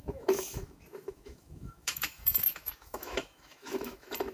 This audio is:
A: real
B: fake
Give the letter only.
B